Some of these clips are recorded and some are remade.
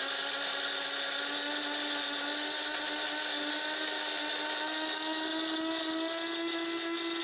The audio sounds recorded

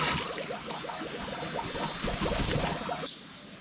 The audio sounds recorded